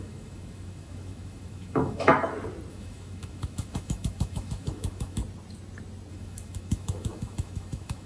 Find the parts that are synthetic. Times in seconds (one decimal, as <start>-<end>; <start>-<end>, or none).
0.0-2.1; 2.7-5.2; 6.1-8.1